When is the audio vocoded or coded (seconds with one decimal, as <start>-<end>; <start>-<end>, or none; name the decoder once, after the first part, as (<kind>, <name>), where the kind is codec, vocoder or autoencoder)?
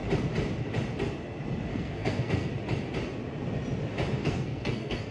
1.7-2.5 (codec, SNAC); 4.2-5.1